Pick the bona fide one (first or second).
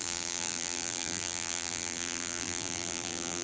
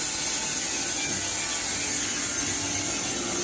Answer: second